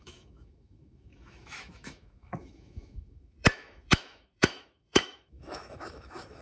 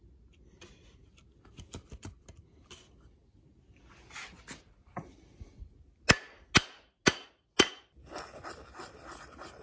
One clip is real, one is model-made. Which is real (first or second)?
second